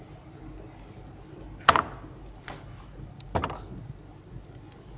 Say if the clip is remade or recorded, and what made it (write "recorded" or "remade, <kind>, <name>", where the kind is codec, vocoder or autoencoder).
recorded